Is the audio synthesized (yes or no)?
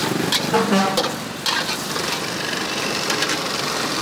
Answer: yes